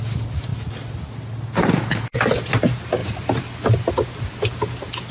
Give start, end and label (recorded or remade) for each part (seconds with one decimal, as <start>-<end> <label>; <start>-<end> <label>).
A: 0.0-3.0 recorded; 3.0-3.9 remade; 3.9-5.1 recorded